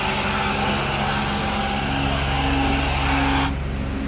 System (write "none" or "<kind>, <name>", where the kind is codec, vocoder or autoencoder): none